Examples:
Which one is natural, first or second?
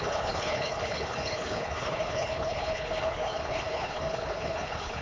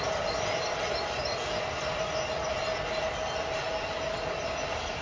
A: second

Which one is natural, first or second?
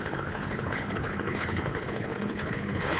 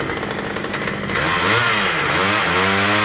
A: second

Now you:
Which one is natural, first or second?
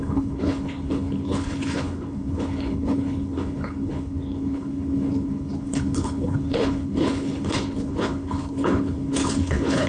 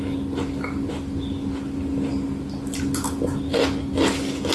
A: second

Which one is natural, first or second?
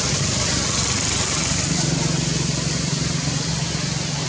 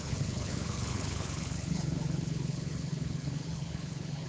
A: first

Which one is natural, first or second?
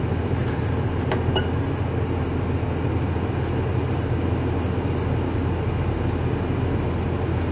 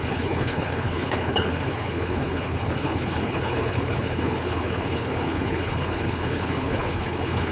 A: first